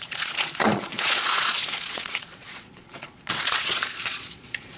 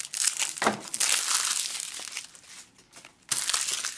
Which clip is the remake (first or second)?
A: first